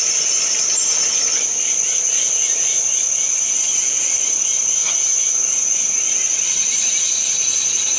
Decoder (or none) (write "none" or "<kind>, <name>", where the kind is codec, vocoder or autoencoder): none